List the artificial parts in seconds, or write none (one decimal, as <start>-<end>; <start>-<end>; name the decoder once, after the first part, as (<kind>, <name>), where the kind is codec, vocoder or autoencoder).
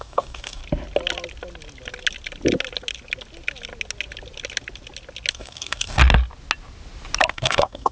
0.0-0.6 (codec, DAC); 5.3-6.0; 7.3-7.9